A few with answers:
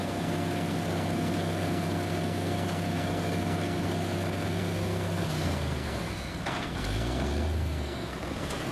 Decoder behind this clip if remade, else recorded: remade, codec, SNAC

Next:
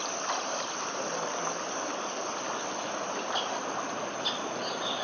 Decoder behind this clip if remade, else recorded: recorded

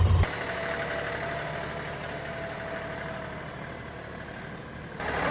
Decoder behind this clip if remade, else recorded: recorded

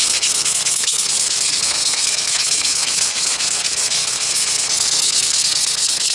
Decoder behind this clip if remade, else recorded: remade, codec, SNAC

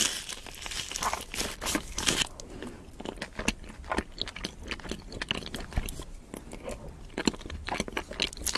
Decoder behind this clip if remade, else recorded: recorded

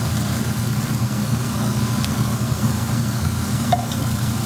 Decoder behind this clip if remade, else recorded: remade, codec, SNAC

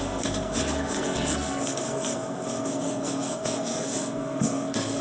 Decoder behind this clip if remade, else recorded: remade, codec, SNAC